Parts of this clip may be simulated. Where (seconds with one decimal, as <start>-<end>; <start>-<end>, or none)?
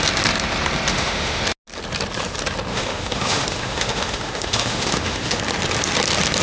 0.9-1.4; 2.7-5.4